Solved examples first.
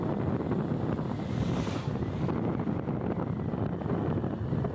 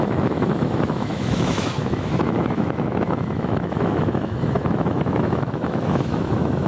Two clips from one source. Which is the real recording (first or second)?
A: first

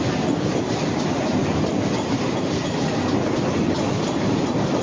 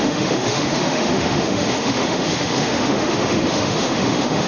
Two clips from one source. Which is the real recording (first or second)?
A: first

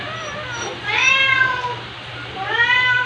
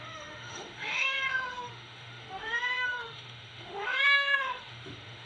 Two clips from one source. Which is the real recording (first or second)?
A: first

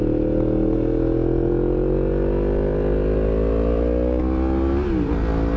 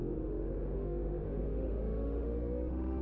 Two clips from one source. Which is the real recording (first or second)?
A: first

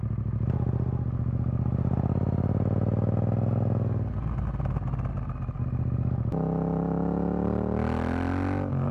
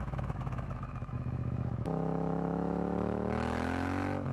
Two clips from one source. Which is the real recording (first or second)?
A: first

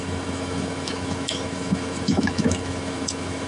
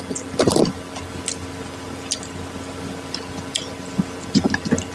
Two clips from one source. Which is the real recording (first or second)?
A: second